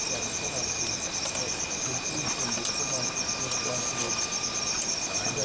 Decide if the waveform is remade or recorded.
recorded